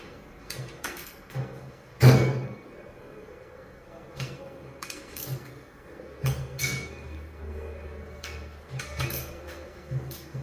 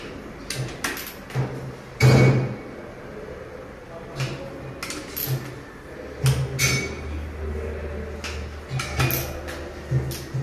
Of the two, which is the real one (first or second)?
second